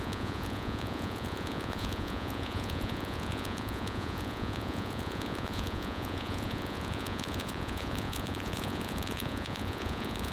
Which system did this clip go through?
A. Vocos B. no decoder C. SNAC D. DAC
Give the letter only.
A